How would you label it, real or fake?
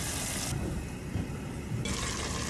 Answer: real